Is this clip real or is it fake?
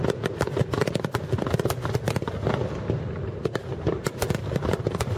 real